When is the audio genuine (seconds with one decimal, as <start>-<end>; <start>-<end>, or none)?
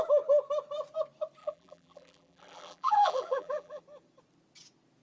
0.0-1.4; 3.8-5.0